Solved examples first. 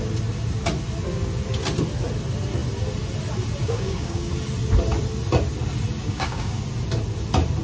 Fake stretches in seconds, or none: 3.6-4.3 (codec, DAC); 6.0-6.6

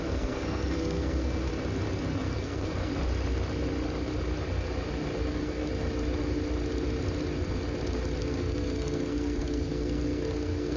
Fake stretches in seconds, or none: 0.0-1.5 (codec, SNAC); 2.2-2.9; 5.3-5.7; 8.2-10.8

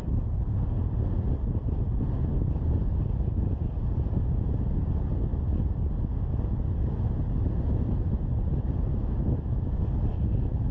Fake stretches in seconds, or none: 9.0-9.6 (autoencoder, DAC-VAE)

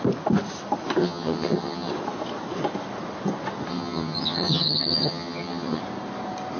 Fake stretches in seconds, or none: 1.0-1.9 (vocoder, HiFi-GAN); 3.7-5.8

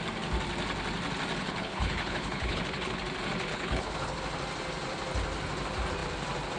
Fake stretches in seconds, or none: 1.4-3.0 (codec, HILCodec); 3.5-4.2

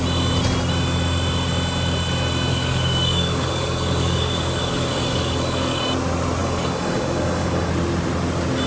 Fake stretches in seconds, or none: 2.5-5.8 (codec, DAC); 6.4-7.7